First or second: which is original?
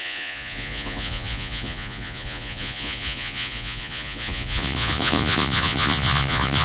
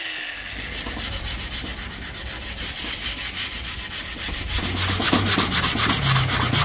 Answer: second